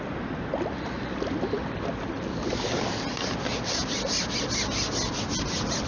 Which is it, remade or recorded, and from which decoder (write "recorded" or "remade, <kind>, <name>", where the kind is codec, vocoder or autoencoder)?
recorded